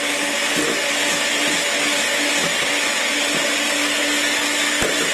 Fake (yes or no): no